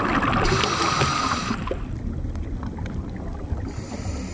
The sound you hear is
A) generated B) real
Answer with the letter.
B